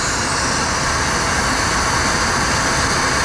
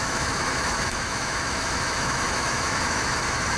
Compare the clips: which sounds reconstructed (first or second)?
second